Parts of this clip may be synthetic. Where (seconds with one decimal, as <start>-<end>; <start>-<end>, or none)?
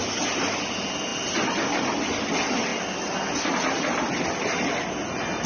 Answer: none